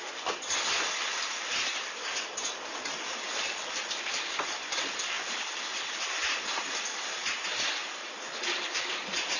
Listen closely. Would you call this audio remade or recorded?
recorded